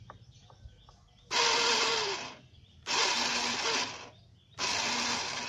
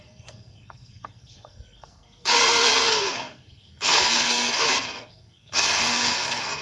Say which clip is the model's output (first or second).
second